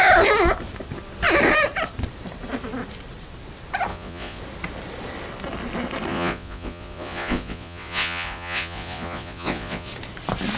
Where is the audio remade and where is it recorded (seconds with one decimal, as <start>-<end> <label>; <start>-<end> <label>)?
0.0-3.9 recorded; 3.9-4.4 remade; 4.4-6.1 recorded; 6.1-9.9 remade; 9.9-10.6 recorded